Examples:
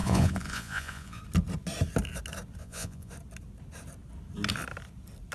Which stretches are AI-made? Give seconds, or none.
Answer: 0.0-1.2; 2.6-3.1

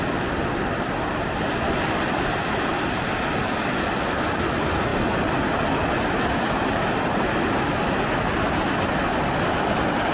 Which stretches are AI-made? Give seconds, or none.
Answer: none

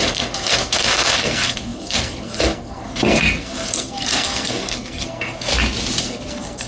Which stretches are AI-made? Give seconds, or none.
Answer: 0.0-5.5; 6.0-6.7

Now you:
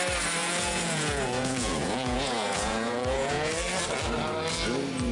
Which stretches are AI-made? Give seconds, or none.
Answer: 0.4-3.5

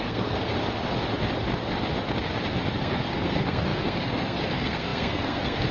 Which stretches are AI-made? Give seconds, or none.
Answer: 0.0-0.5; 2.8-5.7